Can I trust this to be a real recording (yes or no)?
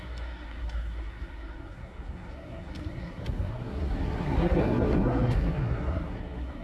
no